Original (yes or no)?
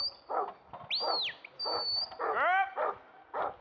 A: yes